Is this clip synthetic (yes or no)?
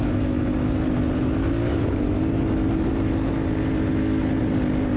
no